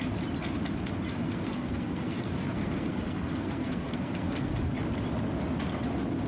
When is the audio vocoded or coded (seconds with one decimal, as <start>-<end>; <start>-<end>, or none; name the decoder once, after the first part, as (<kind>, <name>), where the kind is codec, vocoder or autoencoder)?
1.2-4.5 (codec, SNAC)